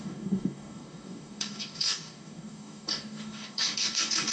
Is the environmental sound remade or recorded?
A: remade